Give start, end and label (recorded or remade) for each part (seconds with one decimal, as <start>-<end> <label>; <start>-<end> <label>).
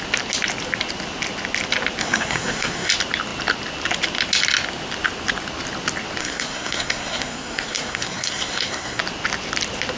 0.0-2.0 recorded; 2.0-2.9 remade; 2.9-6.2 recorded; 6.2-9.0 remade; 9.0-10.0 recorded